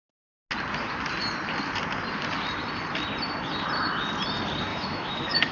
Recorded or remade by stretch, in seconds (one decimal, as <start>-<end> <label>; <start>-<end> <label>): 0.0-4.7 recorded; 4.7-5.5 remade